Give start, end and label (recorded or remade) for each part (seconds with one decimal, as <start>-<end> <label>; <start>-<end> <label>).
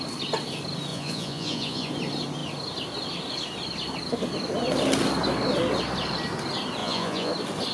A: 0.0-0.9 recorded; 0.9-1.9 remade; 1.9-6.8 recorded; 6.8-7.3 remade; 7.3-7.7 recorded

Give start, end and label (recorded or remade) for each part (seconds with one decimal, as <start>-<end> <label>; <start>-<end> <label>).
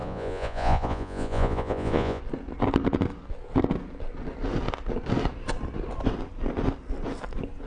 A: 0.0-2.2 remade; 2.2-7.7 recorded